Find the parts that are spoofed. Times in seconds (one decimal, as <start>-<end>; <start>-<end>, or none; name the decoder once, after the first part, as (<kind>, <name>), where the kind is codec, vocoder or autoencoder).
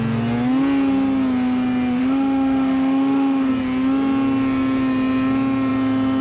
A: 2.0-3.5 (autoencoder, DAC-VAE)